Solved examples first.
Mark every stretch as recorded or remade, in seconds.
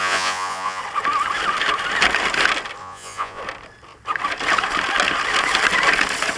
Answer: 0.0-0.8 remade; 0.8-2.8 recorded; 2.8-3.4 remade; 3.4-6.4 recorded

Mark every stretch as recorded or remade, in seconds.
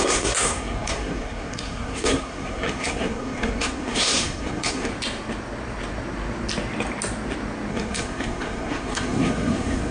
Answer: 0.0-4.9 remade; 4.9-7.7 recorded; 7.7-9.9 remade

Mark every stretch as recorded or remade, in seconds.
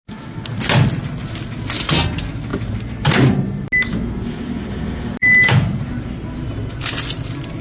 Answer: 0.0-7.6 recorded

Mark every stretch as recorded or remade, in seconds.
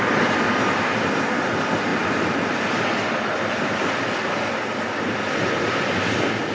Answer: 0.0-6.5 recorded